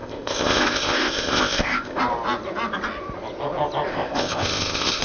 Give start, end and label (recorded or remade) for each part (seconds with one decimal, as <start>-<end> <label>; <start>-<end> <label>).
0.0-2.0 remade; 2.0-3.9 recorded; 3.9-5.0 remade